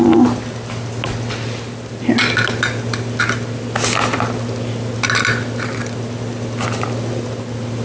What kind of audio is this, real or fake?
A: real